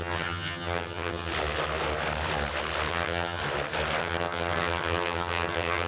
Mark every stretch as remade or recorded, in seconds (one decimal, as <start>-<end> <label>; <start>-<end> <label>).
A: 0.0-1.3 remade; 1.3-2.9 recorded; 2.9-3.4 remade; 3.4-4.0 recorded; 4.0-5.9 remade